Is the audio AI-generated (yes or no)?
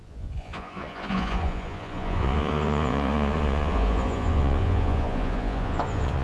yes